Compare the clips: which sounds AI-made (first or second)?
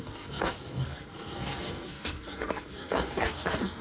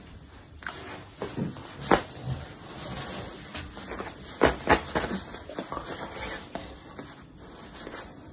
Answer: first